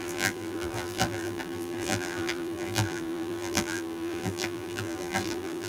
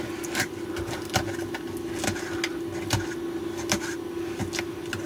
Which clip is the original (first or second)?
second